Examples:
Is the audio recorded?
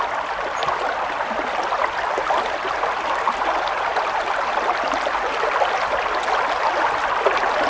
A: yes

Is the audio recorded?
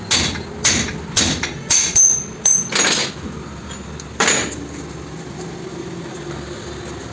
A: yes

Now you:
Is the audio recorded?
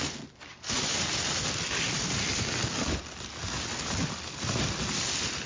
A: yes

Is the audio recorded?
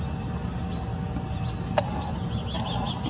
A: yes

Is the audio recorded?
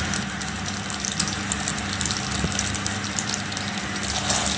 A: yes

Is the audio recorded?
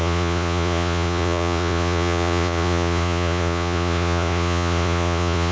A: no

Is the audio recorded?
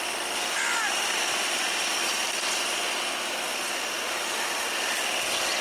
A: yes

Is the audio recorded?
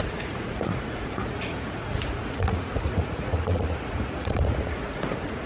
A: no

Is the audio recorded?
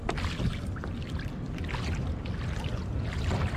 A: yes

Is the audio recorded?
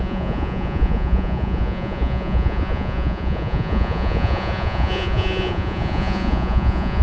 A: no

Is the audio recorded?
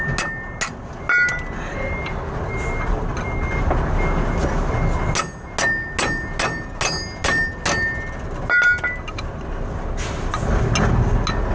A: yes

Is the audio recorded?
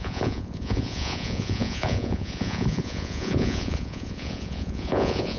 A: no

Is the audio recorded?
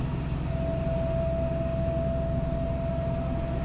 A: yes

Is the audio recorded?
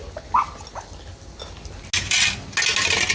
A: yes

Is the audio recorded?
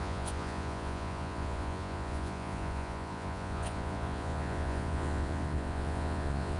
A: no